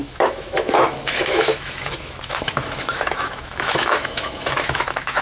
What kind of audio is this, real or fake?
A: fake